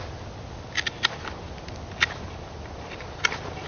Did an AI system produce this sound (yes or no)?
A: no